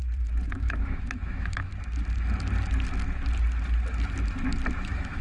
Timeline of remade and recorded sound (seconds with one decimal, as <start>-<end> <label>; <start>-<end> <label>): 0.0-0.5 recorded; 0.5-1.7 remade; 1.7-4.8 recorded; 4.8-5.2 remade